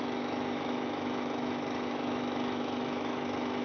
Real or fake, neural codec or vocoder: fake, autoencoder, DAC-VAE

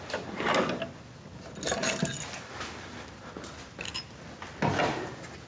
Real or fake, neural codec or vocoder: real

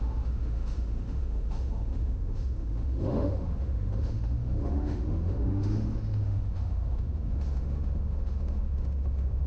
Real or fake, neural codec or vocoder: fake, autoencoder, DAC-VAE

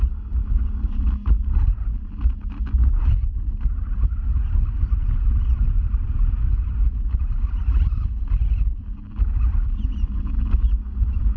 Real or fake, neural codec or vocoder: real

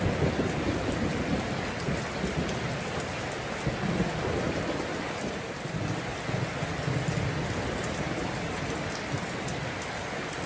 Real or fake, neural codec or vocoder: real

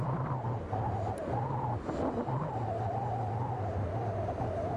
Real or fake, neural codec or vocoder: real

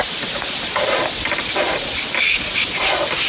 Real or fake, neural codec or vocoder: real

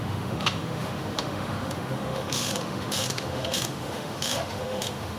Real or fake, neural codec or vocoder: fake, autoencoder, DAC-VAE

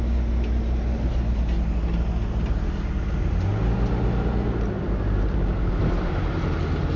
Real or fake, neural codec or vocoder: real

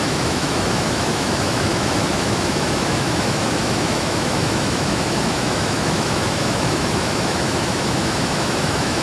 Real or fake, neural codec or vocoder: fake, autoencoder, DAC-VAE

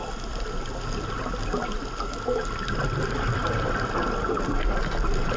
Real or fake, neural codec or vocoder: real